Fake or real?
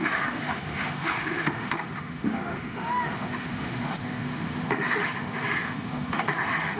fake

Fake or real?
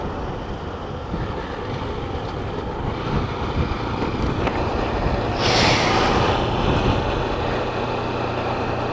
real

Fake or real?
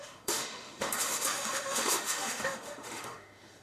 fake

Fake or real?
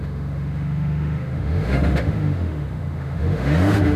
fake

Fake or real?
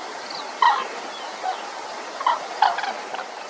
real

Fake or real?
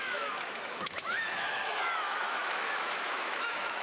fake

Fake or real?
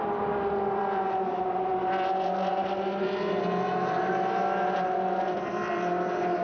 real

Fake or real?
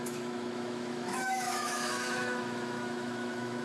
fake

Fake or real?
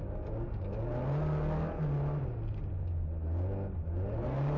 real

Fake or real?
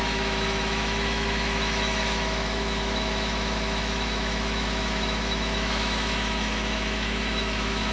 fake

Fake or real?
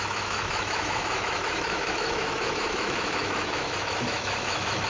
fake